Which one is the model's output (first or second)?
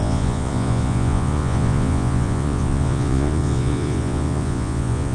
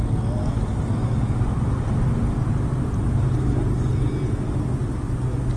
first